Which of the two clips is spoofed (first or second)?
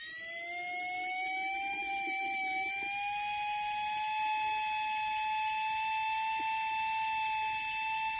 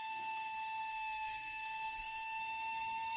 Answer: second